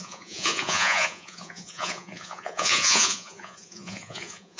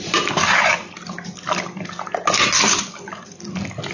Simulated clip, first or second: first